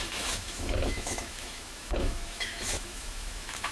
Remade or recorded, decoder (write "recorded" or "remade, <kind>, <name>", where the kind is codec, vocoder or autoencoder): remade, autoencoder, DAC-VAE